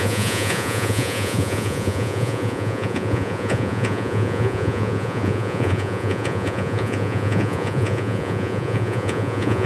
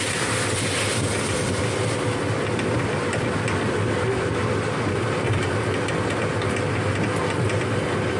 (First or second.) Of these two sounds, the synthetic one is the first